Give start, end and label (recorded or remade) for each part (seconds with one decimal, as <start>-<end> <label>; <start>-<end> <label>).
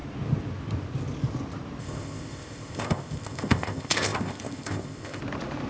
0.0-1.8 recorded; 1.8-5.2 remade; 5.2-5.7 recorded